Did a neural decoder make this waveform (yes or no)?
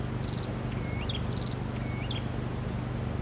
no